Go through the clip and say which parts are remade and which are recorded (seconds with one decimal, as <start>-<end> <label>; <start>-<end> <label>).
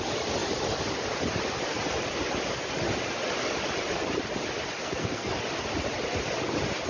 0.0-4.8 recorded; 4.8-5.3 remade; 5.3-6.9 recorded